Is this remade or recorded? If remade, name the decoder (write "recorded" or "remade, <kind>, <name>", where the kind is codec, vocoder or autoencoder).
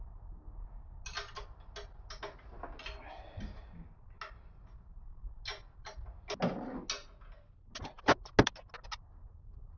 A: recorded